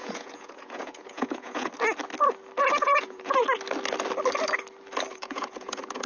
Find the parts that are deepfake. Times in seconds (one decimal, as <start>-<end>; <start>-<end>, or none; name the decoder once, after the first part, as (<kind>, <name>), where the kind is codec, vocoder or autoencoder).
0.0-1.7 (vocoder, Vocos); 2.6-3.4; 5.1-6.1